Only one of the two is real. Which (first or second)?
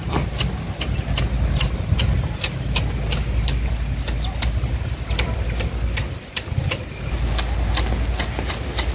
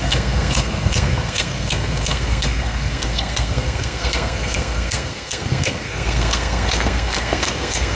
first